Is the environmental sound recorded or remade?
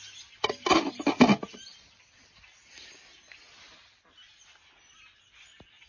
recorded